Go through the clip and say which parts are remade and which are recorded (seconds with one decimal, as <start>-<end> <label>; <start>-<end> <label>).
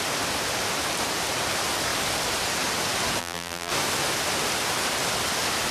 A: 0.0-3.2 recorded; 3.2-3.7 remade; 3.7-5.7 recorded